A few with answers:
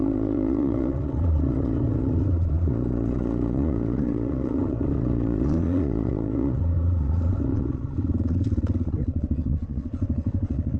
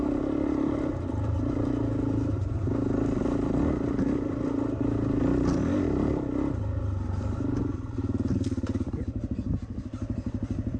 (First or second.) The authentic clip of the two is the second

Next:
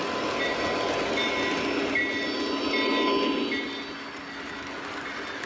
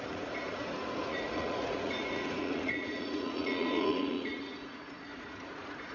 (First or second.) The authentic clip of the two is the first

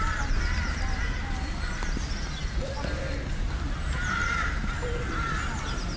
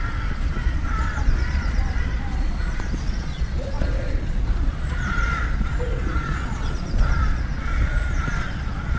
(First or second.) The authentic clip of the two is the first